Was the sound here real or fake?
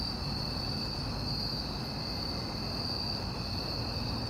real